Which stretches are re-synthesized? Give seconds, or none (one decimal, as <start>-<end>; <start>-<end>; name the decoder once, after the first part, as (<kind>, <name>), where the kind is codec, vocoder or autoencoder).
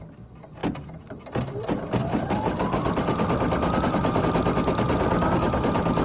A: none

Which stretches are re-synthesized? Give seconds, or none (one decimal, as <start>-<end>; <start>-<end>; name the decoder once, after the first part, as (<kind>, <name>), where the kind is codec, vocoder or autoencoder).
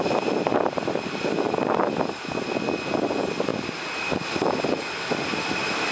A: none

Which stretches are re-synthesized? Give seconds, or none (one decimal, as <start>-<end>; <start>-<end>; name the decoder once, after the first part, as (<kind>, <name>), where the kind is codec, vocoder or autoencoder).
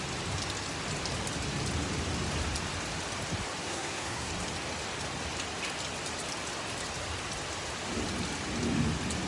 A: 3.6-4.3 (codec, SNAC)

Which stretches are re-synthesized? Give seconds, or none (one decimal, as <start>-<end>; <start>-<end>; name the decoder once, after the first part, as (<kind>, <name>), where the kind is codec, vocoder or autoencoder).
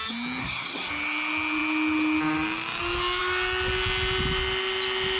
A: 0.4-0.9 (codec, SNAC)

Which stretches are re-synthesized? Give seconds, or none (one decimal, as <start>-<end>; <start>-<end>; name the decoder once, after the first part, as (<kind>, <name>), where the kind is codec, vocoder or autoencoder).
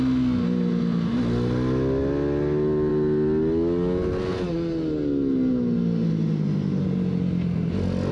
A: none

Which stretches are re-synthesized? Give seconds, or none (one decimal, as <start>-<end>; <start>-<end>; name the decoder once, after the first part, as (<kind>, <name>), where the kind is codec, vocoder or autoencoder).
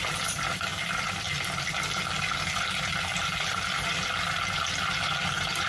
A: none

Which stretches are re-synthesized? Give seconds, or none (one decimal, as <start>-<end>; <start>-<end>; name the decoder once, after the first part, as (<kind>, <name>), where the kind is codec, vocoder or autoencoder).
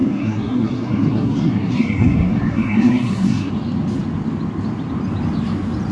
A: 0.0-3.5 (codec, SNAC)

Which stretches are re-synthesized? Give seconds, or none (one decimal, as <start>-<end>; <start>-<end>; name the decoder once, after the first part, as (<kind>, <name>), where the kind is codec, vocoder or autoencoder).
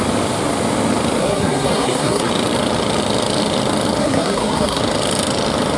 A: 1.2-2.3 (codec, SNAC); 4.0-4.8